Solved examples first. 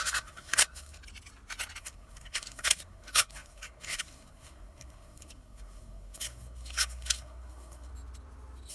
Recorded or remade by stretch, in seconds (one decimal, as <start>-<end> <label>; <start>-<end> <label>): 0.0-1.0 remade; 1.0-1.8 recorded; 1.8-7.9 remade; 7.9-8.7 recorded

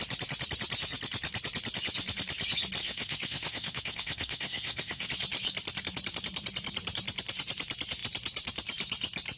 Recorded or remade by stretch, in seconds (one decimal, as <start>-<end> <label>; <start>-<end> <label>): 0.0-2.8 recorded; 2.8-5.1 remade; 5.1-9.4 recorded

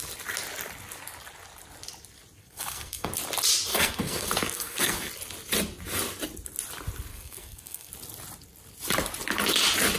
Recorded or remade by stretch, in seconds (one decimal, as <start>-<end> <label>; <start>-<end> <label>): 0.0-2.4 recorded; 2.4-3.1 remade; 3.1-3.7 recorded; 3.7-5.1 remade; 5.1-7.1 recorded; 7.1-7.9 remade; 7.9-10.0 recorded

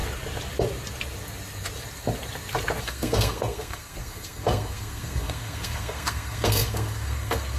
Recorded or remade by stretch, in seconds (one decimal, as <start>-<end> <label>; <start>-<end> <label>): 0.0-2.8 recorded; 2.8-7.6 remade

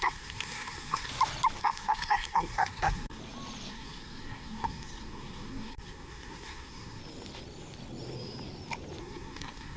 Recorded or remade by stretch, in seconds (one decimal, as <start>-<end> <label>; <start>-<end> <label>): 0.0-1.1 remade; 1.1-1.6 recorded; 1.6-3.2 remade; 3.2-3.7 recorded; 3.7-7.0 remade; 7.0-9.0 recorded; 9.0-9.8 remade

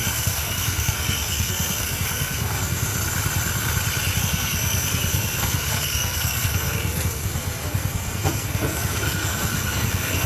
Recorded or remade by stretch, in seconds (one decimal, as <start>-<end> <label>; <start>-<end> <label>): 0.0-2.9 remade; 2.9-4.2 recorded; 4.2-10.3 remade

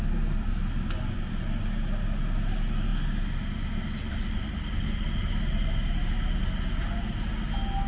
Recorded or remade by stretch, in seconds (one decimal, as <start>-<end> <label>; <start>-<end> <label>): 0.0-7.9 recorded